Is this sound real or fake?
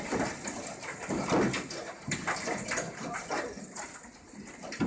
real